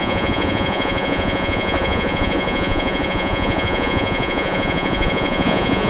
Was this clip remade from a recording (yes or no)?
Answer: yes